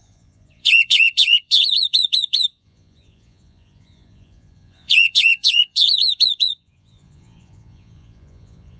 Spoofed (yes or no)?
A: yes